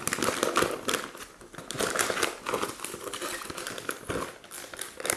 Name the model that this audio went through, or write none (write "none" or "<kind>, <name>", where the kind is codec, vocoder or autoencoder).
none